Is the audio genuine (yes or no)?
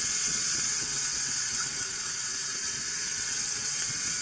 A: no